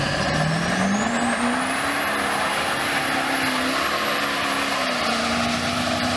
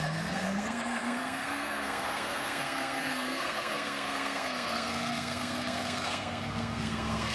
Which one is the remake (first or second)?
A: second